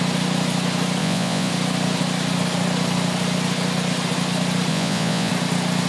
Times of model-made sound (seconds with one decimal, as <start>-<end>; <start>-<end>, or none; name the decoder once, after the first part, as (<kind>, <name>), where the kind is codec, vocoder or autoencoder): 1.0-1.5 (vocoder, Vocos); 4.7-5.3